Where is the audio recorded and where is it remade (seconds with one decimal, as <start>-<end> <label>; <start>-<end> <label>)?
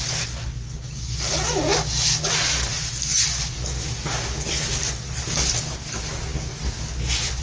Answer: 0.0-7.4 recorded